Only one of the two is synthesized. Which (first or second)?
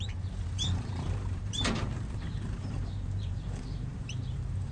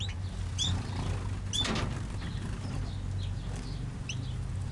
first